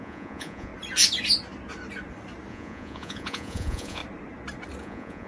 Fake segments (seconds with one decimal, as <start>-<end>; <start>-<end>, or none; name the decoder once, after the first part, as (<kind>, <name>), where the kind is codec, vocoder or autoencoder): 0.0-0.7 (vocoder, Vocos); 2.5-4.0; 4.8-5.3